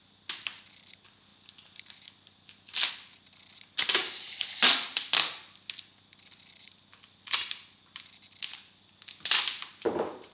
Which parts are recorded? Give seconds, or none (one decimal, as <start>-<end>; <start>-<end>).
0.0-10.3

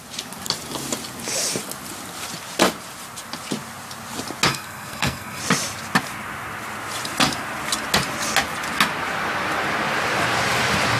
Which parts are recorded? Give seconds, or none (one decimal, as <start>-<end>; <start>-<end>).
0.0-4.5; 5.4-11.0

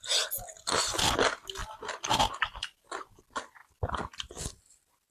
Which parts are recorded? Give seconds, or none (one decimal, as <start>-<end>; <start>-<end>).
0.0-1.6; 3.0-5.1

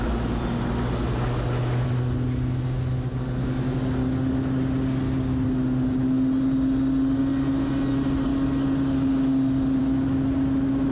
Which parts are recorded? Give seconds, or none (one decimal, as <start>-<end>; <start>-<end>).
0.0-10.9